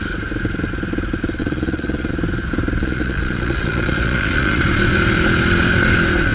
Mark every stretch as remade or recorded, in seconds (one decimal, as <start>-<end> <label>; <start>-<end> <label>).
0.0-1.4 recorded; 1.4-2.1 remade; 2.1-2.8 recorded; 2.8-4.6 remade; 4.6-6.3 recorded